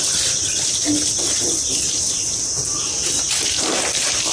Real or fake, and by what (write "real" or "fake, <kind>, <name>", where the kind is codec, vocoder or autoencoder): real